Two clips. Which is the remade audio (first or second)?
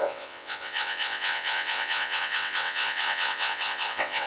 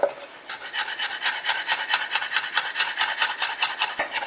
first